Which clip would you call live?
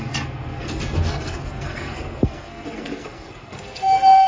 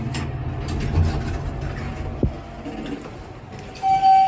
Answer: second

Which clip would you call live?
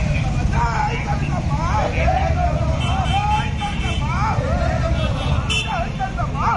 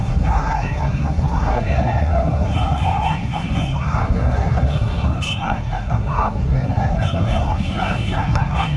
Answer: first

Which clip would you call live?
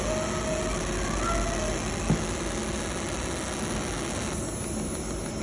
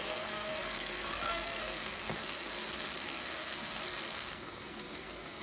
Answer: first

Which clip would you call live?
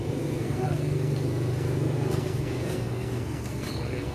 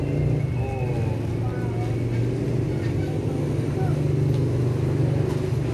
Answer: second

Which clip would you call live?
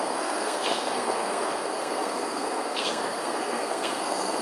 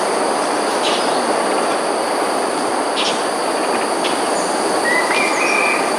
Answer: second